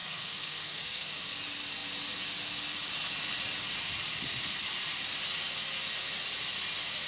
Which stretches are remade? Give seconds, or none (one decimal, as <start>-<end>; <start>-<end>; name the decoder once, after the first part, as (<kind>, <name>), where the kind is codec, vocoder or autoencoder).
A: 0.0-1.1 (codec, SNAC)